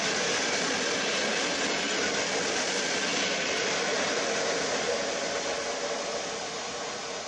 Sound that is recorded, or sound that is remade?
recorded